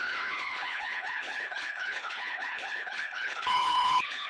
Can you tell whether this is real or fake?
fake